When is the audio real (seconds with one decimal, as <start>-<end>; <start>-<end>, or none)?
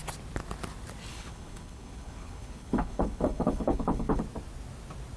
0.0-1.1; 4.2-5.2